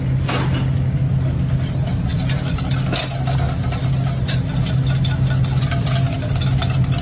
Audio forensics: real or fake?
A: real